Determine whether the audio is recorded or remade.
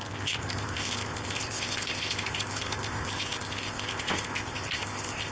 remade